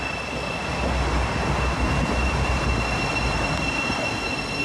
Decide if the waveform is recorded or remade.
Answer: recorded